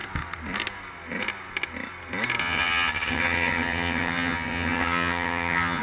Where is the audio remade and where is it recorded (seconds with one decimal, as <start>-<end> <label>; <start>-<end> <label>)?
0.0-2.4 recorded; 2.4-5.8 remade